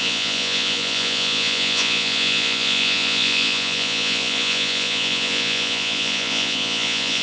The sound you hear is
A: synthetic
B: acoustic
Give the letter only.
A